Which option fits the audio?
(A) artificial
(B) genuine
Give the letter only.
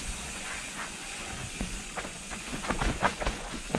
A